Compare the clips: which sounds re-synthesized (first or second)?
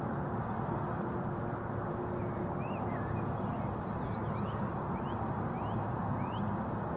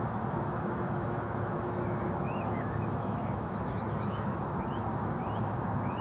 second